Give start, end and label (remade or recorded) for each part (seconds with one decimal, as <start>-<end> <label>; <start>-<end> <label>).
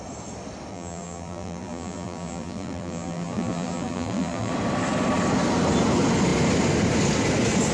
0.0-0.7 recorded; 0.7-4.5 remade; 4.5-7.7 recorded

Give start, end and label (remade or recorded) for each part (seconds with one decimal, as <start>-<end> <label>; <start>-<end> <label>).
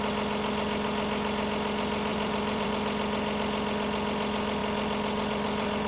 0.0-2.1 recorded; 2.1-2.7 remade; 2.7-4.6 recorded; 4.6-5.9 remade